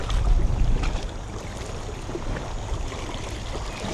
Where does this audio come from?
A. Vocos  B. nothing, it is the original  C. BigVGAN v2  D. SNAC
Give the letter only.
C